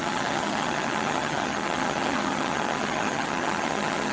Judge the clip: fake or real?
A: fake